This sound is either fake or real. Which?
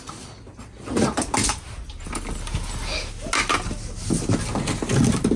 real